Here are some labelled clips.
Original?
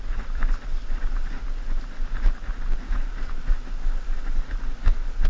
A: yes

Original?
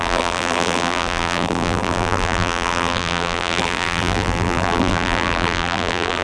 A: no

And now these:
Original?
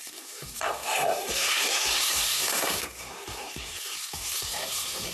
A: no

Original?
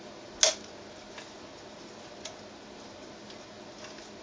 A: yes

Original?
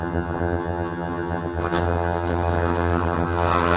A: no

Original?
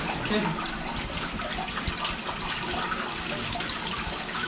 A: yes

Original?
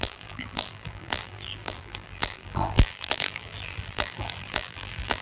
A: no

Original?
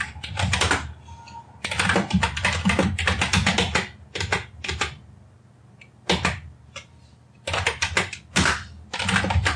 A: yes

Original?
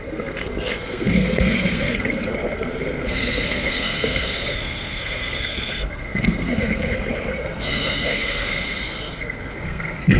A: no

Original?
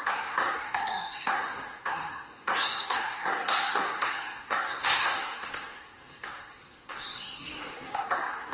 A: no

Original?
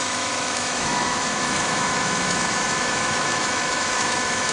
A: no